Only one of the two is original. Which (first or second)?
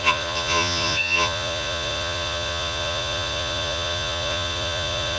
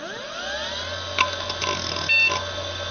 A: second